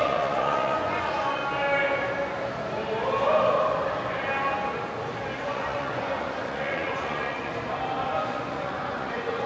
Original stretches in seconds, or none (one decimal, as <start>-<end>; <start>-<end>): 1.4-5.4; 7.5-8.1